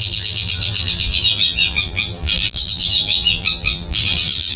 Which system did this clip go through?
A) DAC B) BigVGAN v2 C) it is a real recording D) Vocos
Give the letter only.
B